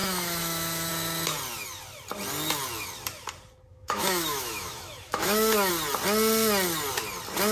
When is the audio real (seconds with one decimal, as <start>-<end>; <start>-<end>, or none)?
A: 0.9-3.7; 5.7-7.5